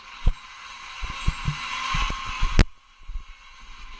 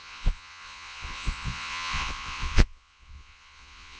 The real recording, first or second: first